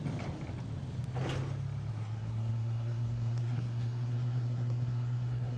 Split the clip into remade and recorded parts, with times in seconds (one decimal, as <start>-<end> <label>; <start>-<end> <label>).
0.0-1.9 recorded; 1.9-5.6 remade